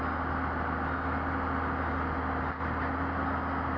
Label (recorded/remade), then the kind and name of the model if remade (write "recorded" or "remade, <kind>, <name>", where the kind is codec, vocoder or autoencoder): recorded